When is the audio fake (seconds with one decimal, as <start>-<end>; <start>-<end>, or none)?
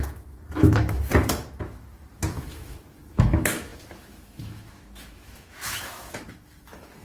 0.0-7.0